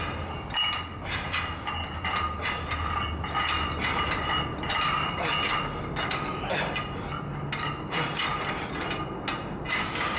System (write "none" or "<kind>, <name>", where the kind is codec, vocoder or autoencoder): none